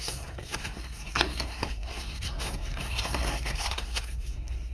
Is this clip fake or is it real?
fake